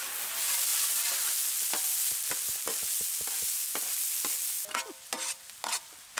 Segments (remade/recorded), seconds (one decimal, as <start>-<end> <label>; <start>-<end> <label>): 0.0-6.2 recorded